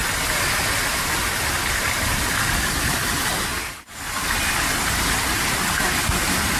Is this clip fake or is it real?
real